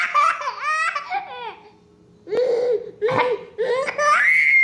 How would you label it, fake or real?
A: real